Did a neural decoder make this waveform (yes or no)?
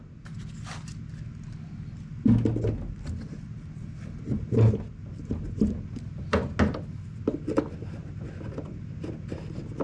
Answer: no